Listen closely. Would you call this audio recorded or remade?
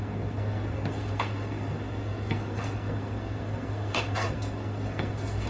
remade